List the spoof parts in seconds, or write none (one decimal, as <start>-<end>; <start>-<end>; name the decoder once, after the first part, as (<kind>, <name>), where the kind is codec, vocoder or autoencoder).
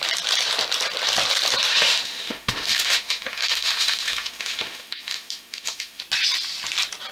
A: 1.7-6.0 (autoencoder, DAC-VAE)